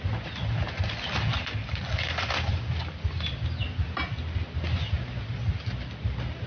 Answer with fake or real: real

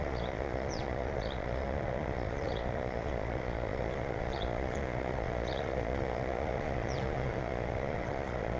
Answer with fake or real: fake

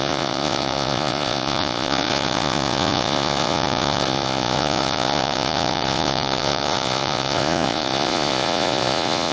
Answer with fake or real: fake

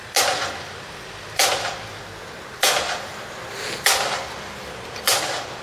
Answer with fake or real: real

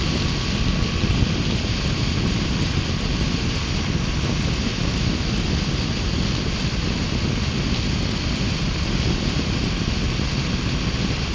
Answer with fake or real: real